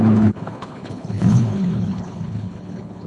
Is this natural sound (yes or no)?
no